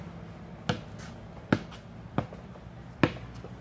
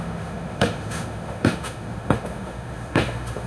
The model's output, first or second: second